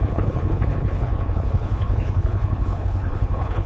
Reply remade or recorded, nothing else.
remade